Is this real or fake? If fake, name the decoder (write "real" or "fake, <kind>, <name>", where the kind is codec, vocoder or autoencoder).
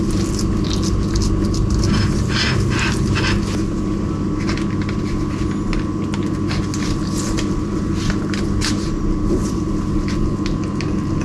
real